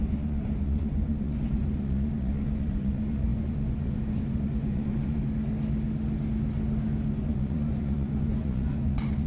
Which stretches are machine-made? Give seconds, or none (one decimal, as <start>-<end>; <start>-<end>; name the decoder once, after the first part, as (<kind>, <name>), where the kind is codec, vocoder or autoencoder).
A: 0.0-5.2 (vocoder, Vocos); 7.1-9.3